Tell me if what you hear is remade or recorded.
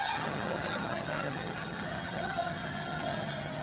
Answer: remade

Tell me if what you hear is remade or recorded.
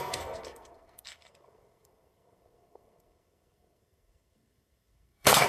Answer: remade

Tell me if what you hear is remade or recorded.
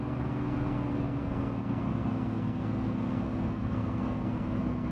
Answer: remade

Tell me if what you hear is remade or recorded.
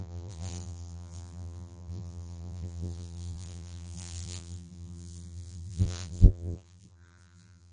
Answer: remade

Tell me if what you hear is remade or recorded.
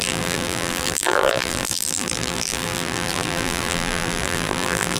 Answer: remade